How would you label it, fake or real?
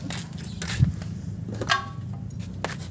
real